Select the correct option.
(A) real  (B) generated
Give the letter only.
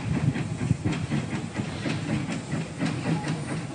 A